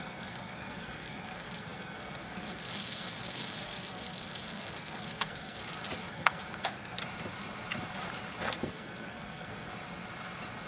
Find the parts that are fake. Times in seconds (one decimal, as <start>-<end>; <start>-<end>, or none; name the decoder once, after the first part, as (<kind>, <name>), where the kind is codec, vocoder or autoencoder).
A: 0.0-5.6 (codec, SNAC); 6.1-7.0; 8.4-9.7